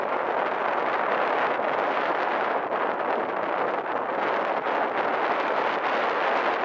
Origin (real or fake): real